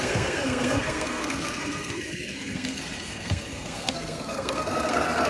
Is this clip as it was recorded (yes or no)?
no